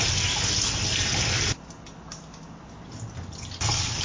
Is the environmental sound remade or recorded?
recorded